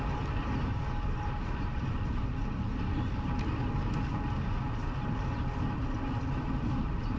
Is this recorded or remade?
recorded